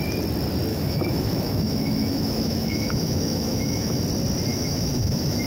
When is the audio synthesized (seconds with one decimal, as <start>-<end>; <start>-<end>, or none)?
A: 0.7-4.0; 4.5-5.5